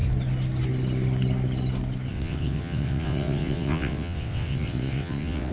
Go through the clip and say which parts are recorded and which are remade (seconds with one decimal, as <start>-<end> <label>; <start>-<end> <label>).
0.0-2.1 recorded; 2.1-5.5 remade